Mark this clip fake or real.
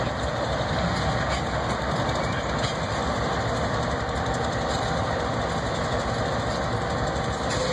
real